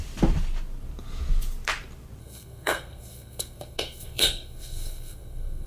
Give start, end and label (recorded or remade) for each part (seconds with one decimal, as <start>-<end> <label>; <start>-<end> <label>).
0.0-2.2 recorded; 2.2-5.7 remade